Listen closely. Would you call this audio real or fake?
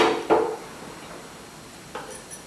real